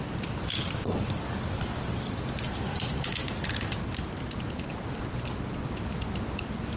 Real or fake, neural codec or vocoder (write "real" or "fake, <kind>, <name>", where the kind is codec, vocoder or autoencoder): real